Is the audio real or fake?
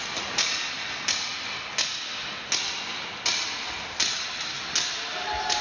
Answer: real